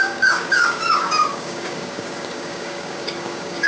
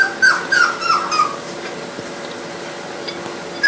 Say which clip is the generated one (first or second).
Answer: first